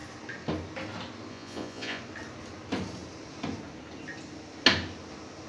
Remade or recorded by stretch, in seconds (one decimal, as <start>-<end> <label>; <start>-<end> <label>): 0.0-1.3 recorded; 1.3-2.0 remade; 2.0-5.5 recorded